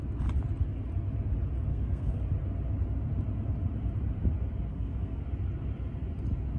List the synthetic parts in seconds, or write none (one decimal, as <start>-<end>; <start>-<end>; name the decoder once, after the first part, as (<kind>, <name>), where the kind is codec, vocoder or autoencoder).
1.7-2.2 (codec, SNAC); 4.7-5.2